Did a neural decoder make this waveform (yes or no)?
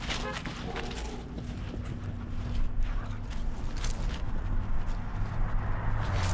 no